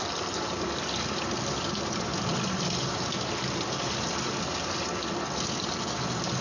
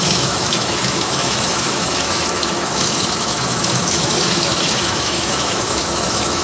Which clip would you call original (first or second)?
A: first